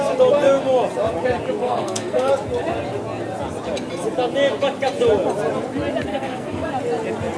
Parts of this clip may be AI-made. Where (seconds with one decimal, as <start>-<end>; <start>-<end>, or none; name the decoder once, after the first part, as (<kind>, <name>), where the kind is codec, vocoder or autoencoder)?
1.6-2.3 (codec, SNAC); 6.1-6.7

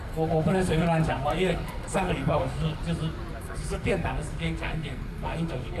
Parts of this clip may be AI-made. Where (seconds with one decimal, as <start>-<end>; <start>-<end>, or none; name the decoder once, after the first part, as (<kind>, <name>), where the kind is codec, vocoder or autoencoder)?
0.0-2.8 (codec, SNAC); 3.4-5.8

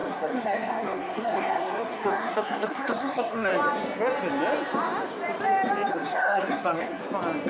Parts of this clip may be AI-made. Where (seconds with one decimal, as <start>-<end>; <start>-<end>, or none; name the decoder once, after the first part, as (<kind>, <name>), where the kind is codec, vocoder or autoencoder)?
0.0-3.5 (codec, SNAC); 5.9-7.0

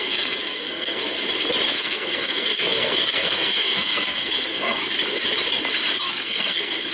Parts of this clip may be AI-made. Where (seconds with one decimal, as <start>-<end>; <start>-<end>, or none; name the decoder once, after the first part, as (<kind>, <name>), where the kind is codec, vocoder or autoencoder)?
0.0-1.0 (codec, SNAC); 1.7-4.8; 6.1-6.9

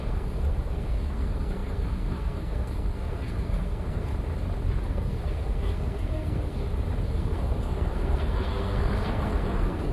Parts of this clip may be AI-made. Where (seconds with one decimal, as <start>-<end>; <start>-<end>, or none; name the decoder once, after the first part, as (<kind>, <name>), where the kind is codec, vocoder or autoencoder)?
0.0-4.1 (codec, SNAC); 4.9-6.6; 7.1-9.9